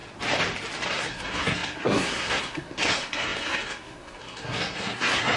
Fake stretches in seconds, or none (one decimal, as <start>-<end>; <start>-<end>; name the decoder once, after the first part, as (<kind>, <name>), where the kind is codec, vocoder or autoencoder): 0.9-5.4 (codec, SNAC)